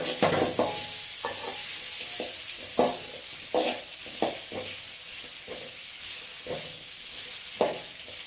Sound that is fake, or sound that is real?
real